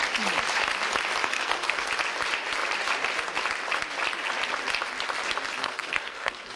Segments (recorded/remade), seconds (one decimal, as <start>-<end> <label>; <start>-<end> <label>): 0.0-1.2 recorded; 1.2-1.9 remade; 1.9-5.6 recorded; 5.6-6.6 remade